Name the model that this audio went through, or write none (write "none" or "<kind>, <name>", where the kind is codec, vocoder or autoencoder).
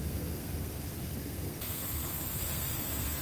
codec, SNAC